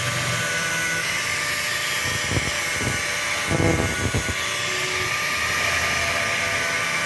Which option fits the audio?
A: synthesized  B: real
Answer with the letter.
B